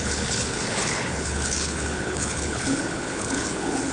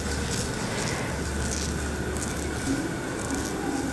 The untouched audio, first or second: second